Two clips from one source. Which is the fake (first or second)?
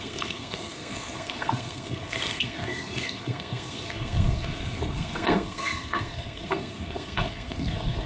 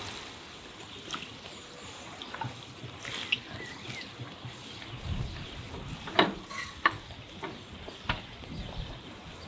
first